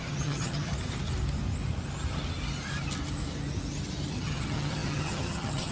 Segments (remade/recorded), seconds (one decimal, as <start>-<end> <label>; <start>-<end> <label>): 0.0-0.7 remade; 0.7-4.1 recorded; 4.1-5.7 remade